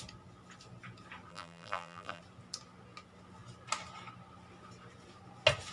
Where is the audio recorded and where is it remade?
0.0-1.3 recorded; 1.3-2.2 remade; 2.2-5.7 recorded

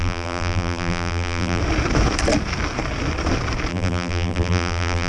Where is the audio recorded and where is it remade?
0.0-1.6 remade; 1.6-3.7 recorded; 3.7-5.1 remade